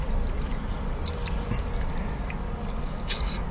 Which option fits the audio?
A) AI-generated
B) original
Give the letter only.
B